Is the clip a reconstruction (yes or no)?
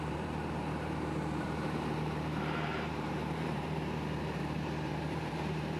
yes